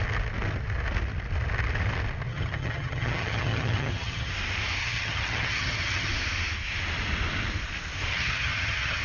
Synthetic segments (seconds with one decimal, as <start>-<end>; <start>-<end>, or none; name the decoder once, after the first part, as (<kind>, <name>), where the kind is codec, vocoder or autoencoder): 2.3-4.3 (vocoder, HiFi-GAN); 4.8-6.1; 8.1-9.0